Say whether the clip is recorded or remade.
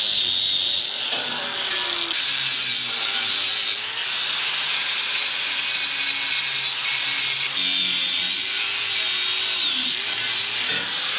recorded